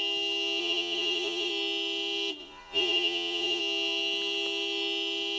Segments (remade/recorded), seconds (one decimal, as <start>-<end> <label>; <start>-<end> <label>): 0.0-0.6 recorded; 0.6-1.5 remade; 1.5-2.4 recorded; 2.4-3.6 remade; 3.6-5.4 recorded